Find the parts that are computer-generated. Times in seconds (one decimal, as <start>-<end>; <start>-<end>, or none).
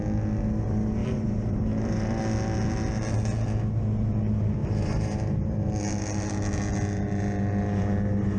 1.0-2.2; 4.6-5.8